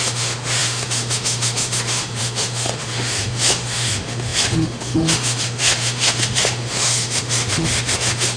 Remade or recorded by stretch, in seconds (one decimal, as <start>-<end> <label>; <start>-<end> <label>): 0.0-8.4 remade